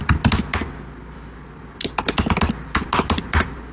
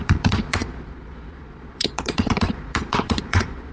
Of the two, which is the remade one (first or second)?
second